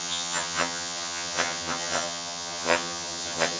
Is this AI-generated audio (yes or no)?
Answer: yes